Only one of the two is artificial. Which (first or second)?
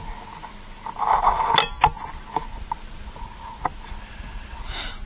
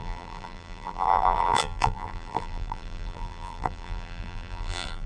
second